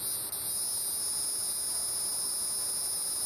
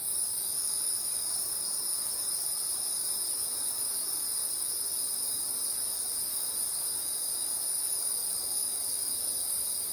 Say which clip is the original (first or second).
first